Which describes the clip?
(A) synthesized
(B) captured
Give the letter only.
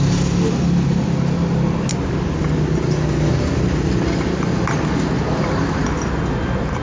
B